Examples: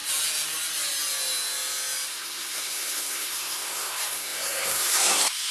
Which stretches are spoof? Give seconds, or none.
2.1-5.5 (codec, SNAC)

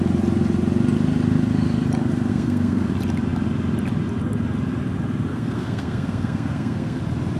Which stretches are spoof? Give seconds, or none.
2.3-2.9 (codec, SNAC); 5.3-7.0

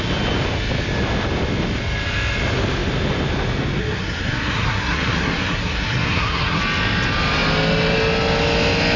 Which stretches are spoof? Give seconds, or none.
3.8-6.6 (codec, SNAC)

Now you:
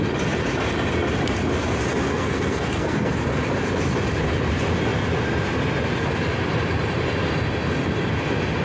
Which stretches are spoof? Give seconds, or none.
1.9-3.1 (codec, SNAC)

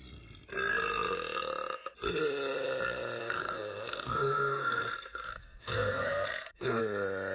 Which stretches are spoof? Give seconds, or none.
3.2-6.8 (codec, SNAC)